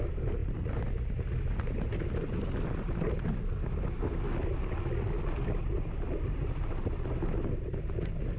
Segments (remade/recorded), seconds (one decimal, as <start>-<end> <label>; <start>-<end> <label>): 0.0-8.4 recorded